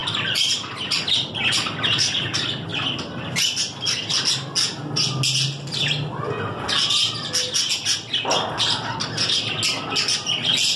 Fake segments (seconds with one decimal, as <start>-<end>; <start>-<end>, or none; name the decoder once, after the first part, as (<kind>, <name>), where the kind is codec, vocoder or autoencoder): 0.0-2.1 (vocoder, BigVGAN v2)